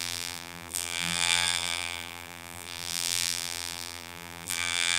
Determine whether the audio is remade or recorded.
remade